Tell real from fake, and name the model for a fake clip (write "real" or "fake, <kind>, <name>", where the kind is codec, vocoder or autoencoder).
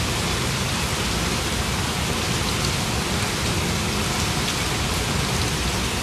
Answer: real